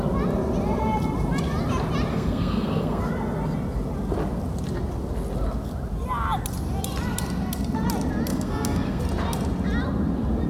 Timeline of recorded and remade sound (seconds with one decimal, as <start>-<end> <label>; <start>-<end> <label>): 0.0-2.1 recorded; 2.1-3.0 remade; 3.0-8.3 recorded; 8.3-9.0 remade; 9.0-10.5 recorded